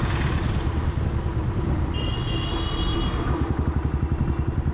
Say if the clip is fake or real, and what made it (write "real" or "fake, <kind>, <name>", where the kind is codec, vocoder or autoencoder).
real